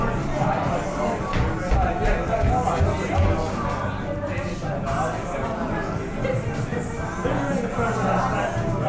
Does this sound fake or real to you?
real